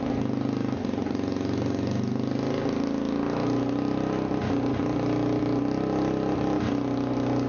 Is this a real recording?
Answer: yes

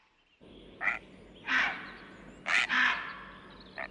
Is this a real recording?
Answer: yes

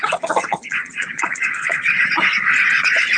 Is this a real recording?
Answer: no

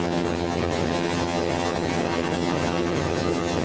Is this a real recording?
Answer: no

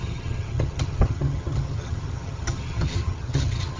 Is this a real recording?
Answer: no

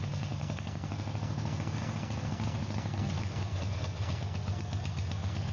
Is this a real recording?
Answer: no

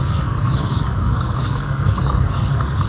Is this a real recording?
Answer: no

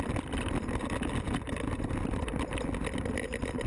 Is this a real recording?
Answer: yes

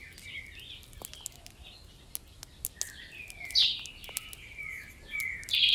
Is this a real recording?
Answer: yes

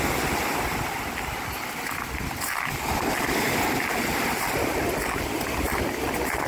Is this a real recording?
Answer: yes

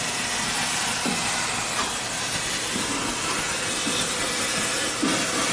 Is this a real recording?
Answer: yes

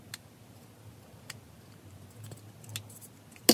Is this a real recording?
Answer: yes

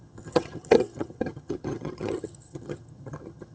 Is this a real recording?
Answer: no